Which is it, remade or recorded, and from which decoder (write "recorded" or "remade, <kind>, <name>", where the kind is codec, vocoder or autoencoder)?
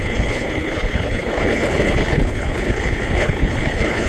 remade, codec, HILCodec